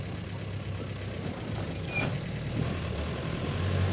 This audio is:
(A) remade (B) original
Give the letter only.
B